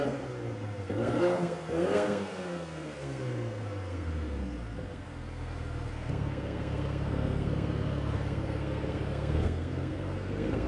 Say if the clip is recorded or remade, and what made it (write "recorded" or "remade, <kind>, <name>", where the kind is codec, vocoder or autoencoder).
remade, codec, SNAC